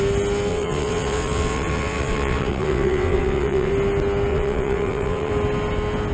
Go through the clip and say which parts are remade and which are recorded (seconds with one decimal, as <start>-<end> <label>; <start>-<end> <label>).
0.0-0.5 recorded; 0.5-3.7 remade; 3.7-4.3 recorded; 4.3-5.3 remade; 5.3-6.1 recorded